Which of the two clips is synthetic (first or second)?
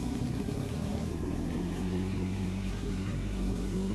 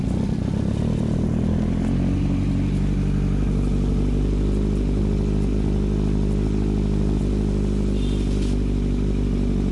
first